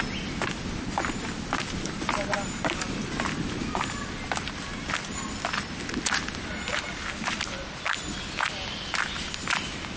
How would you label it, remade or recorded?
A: recorded